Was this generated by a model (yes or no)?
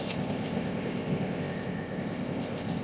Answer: yes